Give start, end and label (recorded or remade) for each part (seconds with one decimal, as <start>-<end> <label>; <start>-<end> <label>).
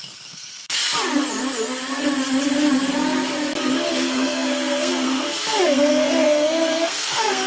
0.0-0.8 remade; 0.8-3.9 recorded; 3.9-7.5 remade